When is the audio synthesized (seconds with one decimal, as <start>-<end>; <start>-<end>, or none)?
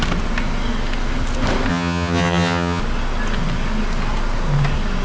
1.7-2.8